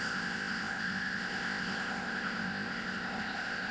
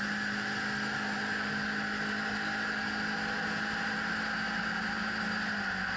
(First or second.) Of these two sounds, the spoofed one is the first